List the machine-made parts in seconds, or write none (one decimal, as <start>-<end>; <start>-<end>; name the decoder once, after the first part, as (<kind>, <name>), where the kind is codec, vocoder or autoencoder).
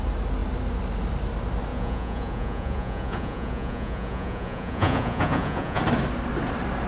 1.7-5.8 (vocoder, Vocos)